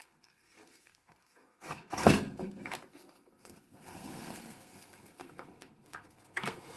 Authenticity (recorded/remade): remade